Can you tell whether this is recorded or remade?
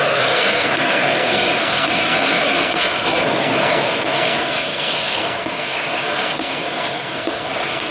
remade